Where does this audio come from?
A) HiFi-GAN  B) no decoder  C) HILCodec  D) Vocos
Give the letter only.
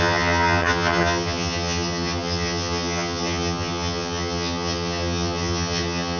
A